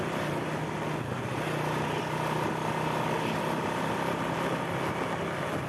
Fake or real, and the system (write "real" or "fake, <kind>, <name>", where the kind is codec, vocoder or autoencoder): real